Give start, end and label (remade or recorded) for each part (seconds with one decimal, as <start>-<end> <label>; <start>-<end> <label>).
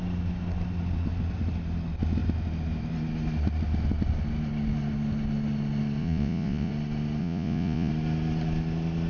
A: 0.0-6.0 recorded; 6.0-6.7 remade; 6.7-7.2 recorded; 7.2-7.9 remade; 7.9-9.1 recorded